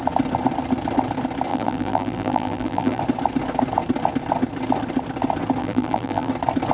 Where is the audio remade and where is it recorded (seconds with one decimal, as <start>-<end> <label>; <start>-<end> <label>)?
0.0-1.5 recorded; 1.5-3.0 remade; 3.0-5.6 recorded; 5.6-6.3 remade; 6.3-6.7 recorded